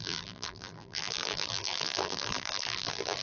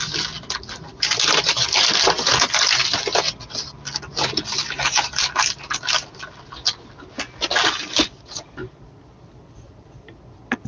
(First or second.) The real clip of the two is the second